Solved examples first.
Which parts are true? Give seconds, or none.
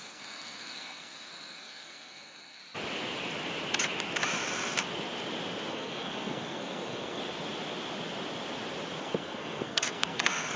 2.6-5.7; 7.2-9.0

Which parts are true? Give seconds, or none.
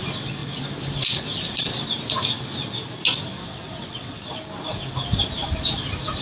0.0-3.4; 4.2-6.2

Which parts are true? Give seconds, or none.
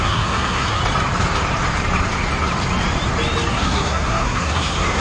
0.8-3.5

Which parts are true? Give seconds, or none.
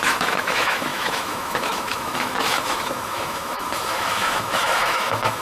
none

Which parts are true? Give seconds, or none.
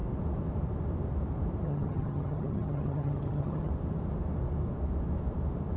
0.0-1.6; 3.7-5.8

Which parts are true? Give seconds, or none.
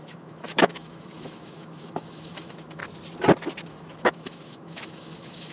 2.8-3.7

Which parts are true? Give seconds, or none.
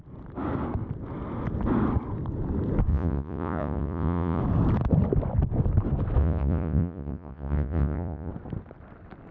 0.0-2.9; 4.4-6.2; 8.3-9.3